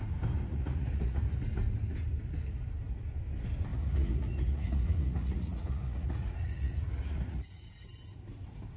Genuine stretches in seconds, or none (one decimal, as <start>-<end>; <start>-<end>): 0.0-0.5; 1.4-3.7; 7.7-8.8